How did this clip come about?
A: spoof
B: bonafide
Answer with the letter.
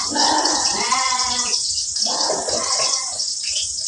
A